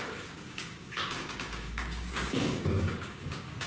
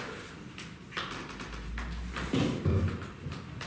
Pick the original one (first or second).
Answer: second